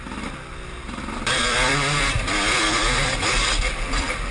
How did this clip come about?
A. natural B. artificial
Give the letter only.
B